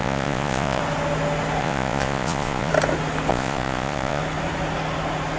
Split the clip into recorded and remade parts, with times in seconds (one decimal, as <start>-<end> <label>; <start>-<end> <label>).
0.0-0.8 remade; 0.8-1.6 recorded; 1.6-2.7 remade; 2.7-3.3 recorded; 3.3-4.2 remade; 4.2-5.4 recorded